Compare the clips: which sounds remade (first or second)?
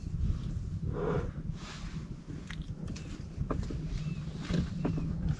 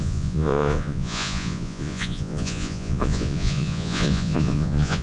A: second